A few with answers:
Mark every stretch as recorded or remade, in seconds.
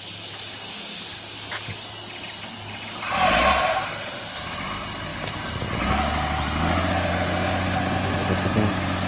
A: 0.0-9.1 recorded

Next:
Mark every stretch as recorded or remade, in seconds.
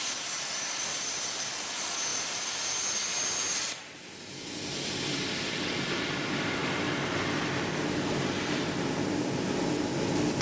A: 0.0-2.1 recorded; 2.1-3.8 remade; 3.8-10.4 recorded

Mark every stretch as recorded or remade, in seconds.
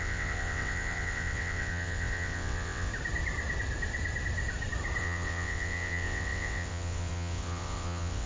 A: 0.0-2.9 remade; 2.9-5.0 recorded; 5.0-8.3 remade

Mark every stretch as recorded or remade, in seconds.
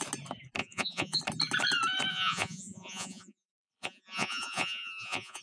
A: 0.0-0.6 recorded; 0.6-1.2 remade; 1.2-2.1 recorded; 2.1-5.4 remade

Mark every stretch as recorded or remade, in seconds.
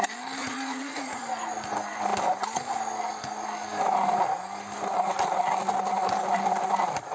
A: 0.0-0.4 recorded; 0.4-1.2 remade; 1.2-7.1 recorded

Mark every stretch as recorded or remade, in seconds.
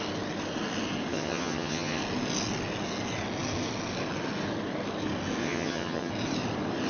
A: 0.0-1.1 recorded; 1.1-2.0 remade; 2.0-5.4 recorded; 5.4-6.1 remade; 6.1-6.9 recorded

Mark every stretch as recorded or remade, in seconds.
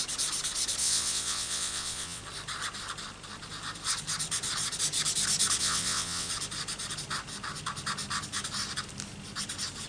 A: 0.0-0.8 recorded; 0.8-2.2 remade; 2.2-5.6 recorded; 5.6-6.3 remade; 6.3-9.9 recorded